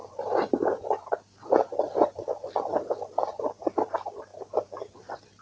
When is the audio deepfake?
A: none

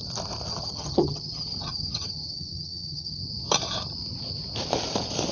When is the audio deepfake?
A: 0.5-3.2 (vocoder, HiFi-GAN)

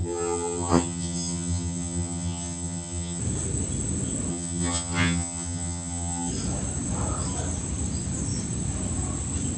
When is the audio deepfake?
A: 0.0-3.2 (vocoder, HiFi-GAN); 4.3-6.3